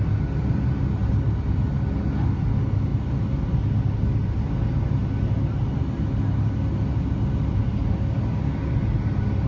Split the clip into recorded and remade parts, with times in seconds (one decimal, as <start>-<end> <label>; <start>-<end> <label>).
0.0-9.5 recorded